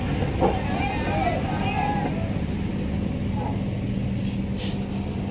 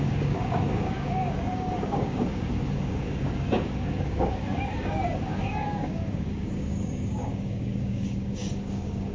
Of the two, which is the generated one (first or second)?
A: second